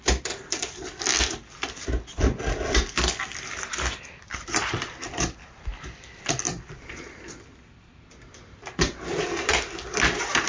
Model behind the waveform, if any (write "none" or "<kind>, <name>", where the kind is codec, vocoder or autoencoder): vocoder, BigVGAN v2